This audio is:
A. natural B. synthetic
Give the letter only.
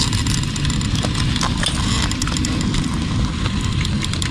A